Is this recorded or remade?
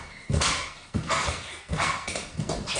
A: remade